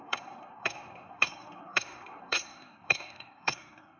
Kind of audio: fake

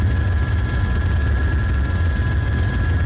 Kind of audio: real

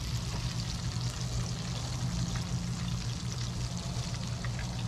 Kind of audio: real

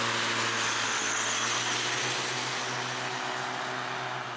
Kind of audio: real